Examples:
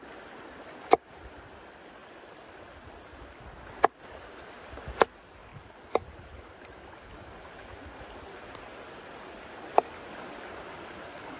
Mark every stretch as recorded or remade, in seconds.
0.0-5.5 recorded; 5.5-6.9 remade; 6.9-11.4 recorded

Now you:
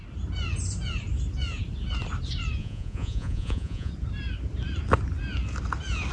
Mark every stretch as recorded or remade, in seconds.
0.0-2.6 recorded; 2.6-3.9 remade; 3.9-6.1 recorded